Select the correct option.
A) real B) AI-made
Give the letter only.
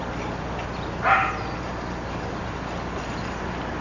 A